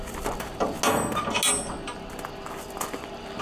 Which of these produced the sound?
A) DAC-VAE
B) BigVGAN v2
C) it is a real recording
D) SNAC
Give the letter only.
C